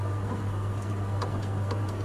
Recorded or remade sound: remade